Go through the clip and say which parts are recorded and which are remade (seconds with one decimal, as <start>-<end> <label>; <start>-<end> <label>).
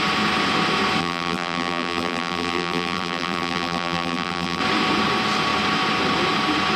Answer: 0.0-1.0 recorded; 1.0-4.6 remade; 4.6-6.8 recorded